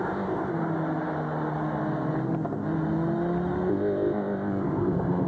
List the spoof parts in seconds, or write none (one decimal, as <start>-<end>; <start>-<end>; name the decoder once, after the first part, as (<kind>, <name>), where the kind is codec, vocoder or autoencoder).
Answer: 0.0-0.5 (codec, ZipCodec); 3.7-5.3